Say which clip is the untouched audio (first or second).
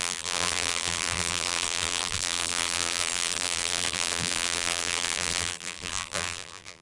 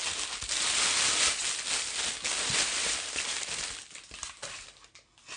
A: second